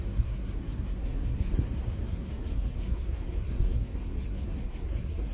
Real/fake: fake